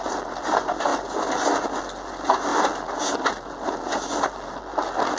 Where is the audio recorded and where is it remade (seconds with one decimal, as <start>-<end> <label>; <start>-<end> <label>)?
0.0-0.9 recorded; 0.9-1.6 remade; 1.6-5.2 recorded